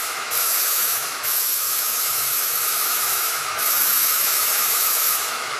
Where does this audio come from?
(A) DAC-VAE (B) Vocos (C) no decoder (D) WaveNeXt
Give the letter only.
A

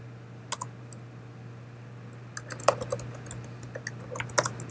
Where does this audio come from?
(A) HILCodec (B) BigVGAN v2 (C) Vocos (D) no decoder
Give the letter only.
D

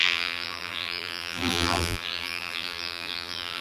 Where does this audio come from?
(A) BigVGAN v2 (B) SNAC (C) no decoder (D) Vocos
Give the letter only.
A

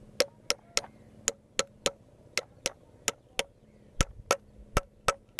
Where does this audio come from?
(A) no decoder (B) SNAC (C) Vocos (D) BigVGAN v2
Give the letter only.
A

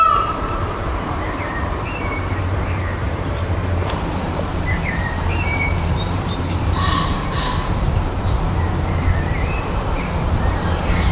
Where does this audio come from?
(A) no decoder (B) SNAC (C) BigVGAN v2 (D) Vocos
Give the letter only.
C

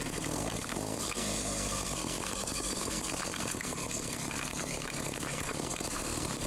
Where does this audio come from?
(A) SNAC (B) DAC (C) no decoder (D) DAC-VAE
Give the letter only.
A